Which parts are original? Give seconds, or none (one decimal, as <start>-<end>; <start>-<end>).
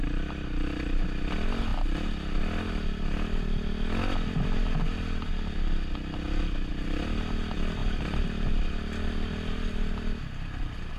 0.0-7.8; 8.6-11.0